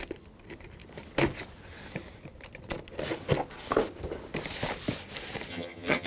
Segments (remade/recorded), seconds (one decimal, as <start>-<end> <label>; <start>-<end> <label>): 0.0-5.5 recorded; 5.5-6.1 remade